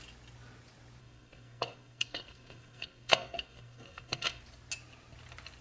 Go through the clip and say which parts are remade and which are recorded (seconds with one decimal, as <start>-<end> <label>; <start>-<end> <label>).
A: 0.0-1.0 recorded; 1.0-4.4 remade; 4.4-5.6 recorded